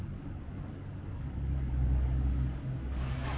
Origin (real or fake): fake